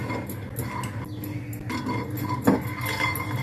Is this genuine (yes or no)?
yes